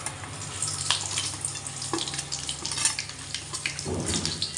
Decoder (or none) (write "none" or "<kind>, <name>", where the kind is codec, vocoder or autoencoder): vocoder, BigVGAN v2